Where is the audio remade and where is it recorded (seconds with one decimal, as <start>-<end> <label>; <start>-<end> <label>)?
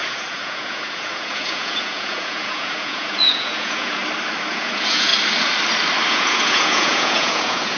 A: 0.0-4.0 remade; 4.0-4.5 recorded; 4.5-5.1 remade; 5.1-6.1 recorded; 6.1-7.8 remade